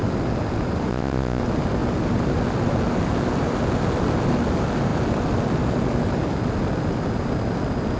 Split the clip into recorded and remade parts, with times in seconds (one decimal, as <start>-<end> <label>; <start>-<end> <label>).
0.0-0.9 recorded; 0.9-1.4 remade; 1.4-8.0 recorded